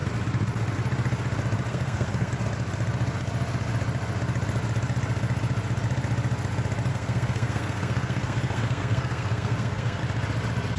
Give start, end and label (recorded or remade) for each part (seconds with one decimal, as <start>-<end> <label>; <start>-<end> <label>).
0.0-1.7 recorded; 1.7-2.3 remade; 2.3-6.9 recorded; 6.9-10.0 remade; 10.0-10.8 recorded